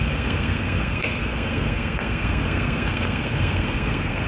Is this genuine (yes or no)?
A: no